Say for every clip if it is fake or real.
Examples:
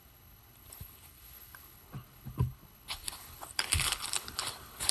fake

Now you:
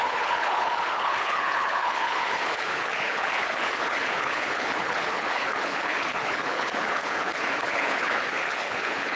fake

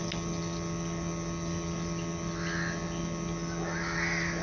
real